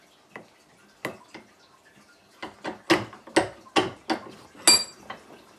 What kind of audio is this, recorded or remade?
recorded